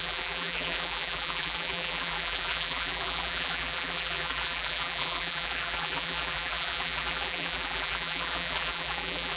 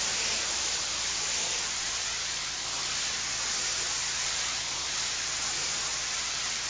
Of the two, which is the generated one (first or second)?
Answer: first